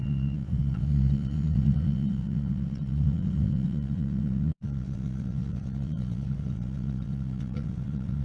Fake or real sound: fake